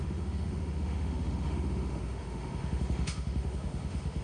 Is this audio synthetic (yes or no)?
yes